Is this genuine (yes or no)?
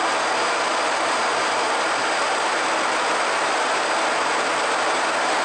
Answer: yes